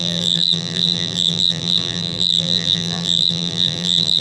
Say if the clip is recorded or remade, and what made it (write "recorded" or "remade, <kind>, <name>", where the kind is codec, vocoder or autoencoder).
remade, vocoder, BigVGAN v2